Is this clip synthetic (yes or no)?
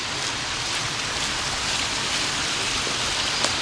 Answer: no